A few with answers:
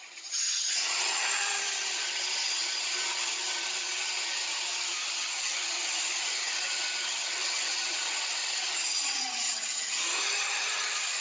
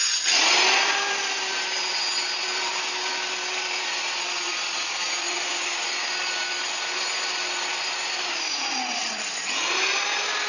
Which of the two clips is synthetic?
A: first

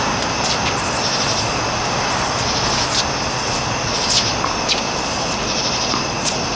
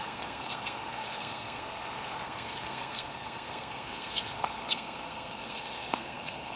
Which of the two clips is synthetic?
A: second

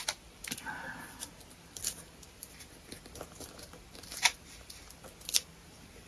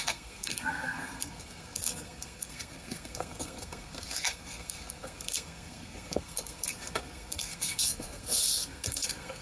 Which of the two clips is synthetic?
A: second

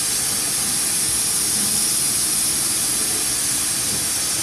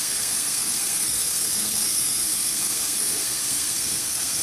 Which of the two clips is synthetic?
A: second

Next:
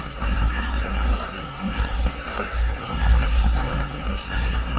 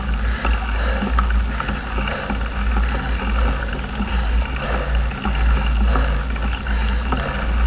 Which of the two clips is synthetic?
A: first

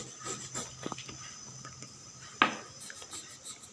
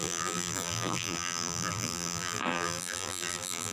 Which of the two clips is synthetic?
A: second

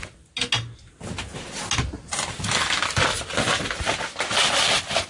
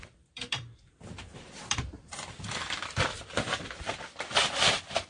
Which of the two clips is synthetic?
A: second